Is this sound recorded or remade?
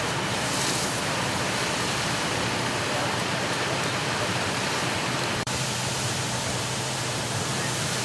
remade